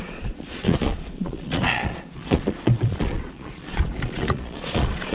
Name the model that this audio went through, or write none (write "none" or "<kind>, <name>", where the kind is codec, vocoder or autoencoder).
vocoder, Vocos